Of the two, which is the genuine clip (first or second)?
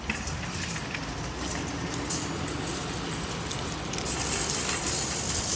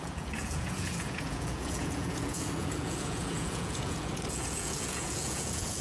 first